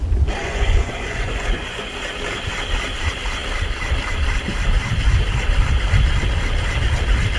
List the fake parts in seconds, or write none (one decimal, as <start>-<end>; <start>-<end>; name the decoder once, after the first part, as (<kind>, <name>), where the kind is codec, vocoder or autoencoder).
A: 0.4-1.9 (vocoder, Vocos)

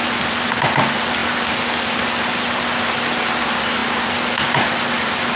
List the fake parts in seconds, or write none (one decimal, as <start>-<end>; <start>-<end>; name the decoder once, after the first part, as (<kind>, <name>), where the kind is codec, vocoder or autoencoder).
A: none

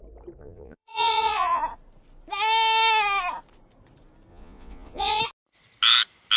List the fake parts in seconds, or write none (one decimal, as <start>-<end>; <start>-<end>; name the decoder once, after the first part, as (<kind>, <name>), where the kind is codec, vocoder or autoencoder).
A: 0.4-1.6 (vocoder, Vocos); 4.3-5.2

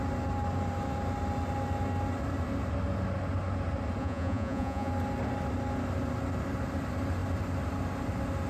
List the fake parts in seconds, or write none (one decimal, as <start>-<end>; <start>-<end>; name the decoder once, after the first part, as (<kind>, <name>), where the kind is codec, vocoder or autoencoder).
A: 4.0-4.9 (vocoder, Vocos)